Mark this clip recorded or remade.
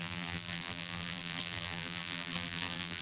remade